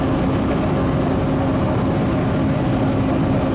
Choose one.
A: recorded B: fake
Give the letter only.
A